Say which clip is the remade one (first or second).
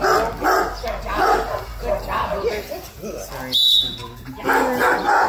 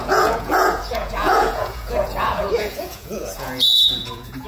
second